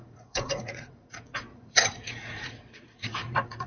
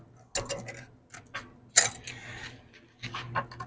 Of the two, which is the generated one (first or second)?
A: first